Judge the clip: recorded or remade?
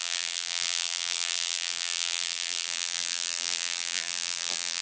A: remade